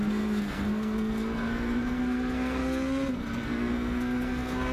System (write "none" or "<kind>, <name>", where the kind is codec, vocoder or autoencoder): codec, SNAC